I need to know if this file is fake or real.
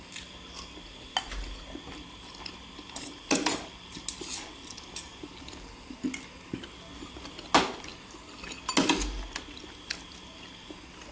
real